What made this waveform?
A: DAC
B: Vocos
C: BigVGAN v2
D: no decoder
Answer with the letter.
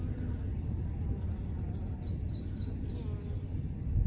D